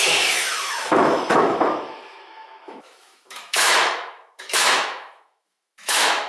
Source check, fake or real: fake